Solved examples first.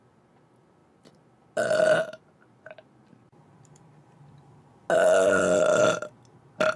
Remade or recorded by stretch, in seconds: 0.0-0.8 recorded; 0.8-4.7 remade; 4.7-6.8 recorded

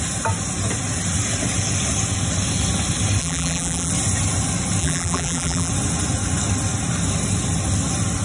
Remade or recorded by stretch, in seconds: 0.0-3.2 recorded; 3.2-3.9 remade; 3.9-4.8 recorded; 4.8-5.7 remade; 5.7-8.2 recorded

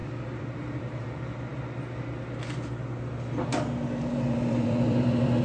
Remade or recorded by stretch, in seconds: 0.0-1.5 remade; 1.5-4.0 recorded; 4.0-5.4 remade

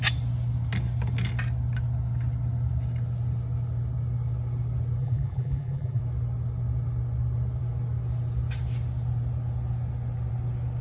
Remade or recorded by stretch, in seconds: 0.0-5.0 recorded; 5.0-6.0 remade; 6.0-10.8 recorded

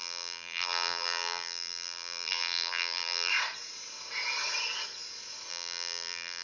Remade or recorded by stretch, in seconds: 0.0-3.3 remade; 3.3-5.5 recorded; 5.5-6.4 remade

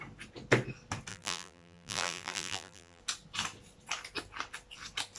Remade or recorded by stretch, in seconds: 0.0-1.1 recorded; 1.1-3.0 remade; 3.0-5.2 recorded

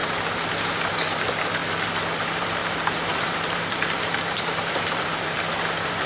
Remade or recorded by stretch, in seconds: 0.0-0.8 recorded; 0.8-1.6 remade; 1.6-2.2 recorded; 2.2-6.1 remade